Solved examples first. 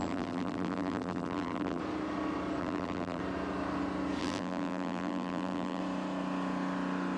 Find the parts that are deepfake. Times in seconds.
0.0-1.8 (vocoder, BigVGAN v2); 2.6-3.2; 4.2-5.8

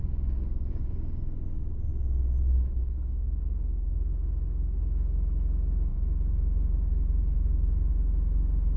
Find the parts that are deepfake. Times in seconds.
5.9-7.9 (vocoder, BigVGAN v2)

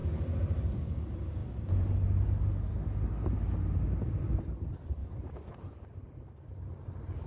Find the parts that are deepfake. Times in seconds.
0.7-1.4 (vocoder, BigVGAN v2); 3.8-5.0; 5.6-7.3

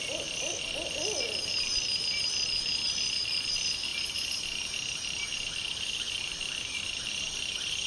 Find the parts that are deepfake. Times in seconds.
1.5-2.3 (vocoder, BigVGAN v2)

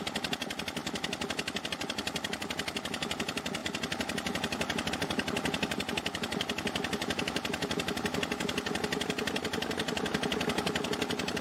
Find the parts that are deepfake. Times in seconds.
none